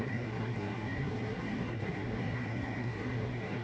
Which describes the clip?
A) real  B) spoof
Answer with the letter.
B